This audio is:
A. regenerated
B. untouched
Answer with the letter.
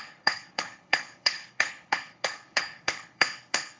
A